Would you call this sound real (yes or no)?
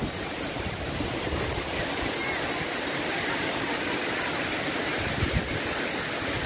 yes